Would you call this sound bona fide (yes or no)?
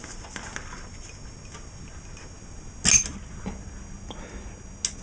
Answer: yes